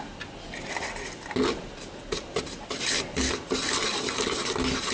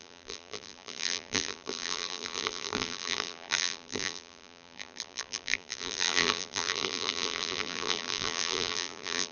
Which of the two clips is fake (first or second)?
second